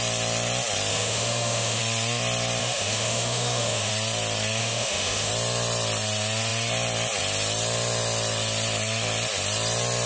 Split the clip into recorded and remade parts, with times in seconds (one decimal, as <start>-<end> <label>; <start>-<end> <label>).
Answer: 0.0-0.9 recorded; 0.9-1.8 remade; 1.8-2.6 recorded; 2.6-3.9 remade; 3.9-4.6 recorded; 4.6-5.3 remade; 5.3-10.1 recorded